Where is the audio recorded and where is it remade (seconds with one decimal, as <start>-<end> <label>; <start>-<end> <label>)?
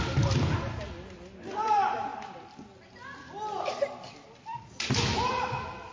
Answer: 0.0-5.9 recorded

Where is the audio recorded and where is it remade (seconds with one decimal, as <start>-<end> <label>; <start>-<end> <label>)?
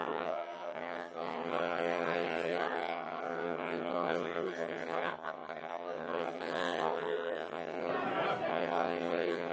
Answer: 0.0-7.9 remade; 7.9-8.5 recorded; 8.5-9.5 remade